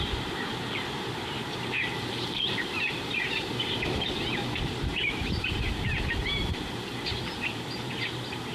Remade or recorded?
remade